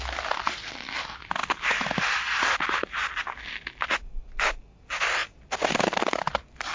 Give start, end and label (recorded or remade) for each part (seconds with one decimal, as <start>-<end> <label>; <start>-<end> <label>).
0.0-6.7 recorded